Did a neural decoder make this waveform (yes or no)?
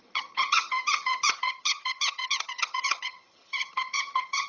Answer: yes